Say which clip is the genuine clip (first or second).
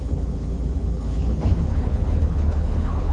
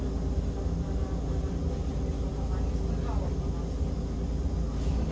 second